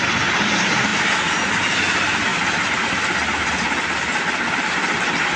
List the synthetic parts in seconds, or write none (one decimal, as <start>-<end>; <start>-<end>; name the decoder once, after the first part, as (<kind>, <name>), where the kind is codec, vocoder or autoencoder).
2.3-5.4 (vocoder, BigVGAN v2)